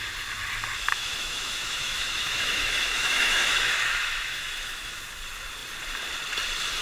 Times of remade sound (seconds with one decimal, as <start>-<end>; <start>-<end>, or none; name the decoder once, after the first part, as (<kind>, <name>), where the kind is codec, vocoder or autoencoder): 0.9-5.0 (autoencoder, DAC-VAE)